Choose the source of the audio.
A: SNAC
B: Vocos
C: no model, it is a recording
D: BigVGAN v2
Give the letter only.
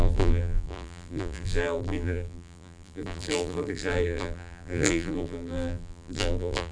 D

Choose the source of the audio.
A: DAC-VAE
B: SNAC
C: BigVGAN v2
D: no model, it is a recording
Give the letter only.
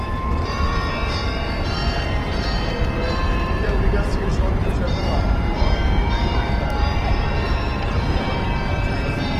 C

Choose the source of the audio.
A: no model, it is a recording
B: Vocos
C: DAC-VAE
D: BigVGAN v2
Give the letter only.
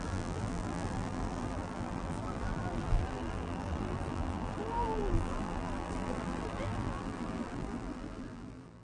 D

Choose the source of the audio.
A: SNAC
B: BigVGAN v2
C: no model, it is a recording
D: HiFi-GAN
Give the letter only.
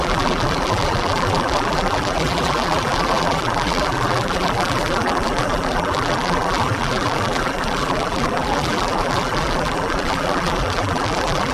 B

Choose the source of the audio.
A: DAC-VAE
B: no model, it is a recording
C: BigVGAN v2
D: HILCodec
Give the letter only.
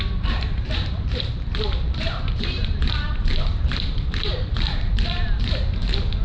C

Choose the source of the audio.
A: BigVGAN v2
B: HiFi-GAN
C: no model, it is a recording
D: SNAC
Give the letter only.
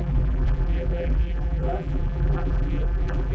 A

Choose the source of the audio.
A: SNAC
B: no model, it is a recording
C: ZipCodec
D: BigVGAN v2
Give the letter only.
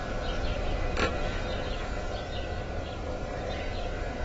B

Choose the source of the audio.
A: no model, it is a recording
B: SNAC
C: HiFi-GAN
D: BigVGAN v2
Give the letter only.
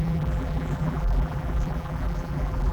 D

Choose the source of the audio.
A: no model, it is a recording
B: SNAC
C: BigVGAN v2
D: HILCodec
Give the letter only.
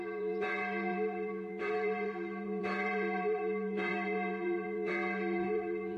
C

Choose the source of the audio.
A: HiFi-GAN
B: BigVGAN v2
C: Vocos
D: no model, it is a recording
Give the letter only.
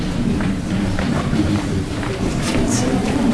B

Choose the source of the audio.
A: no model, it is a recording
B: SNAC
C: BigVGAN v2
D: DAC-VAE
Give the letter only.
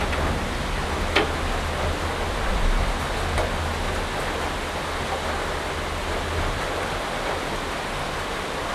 A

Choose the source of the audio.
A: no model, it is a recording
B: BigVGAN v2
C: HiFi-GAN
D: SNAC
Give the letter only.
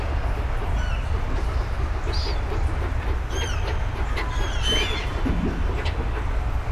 A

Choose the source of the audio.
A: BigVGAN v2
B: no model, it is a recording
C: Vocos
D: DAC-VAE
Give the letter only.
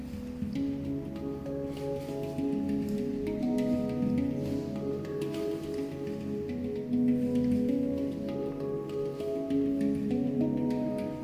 B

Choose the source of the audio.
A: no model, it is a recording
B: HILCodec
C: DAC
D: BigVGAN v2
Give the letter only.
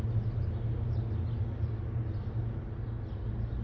A